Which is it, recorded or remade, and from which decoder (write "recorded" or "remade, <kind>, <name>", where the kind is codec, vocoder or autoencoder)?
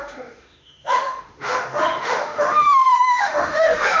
remade, autoencoder, DAC-VAE